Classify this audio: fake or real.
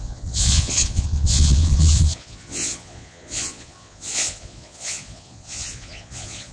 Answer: fake